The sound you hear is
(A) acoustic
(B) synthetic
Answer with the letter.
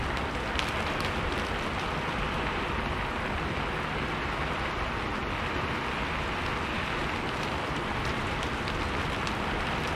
A